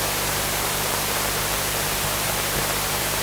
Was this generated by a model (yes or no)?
yes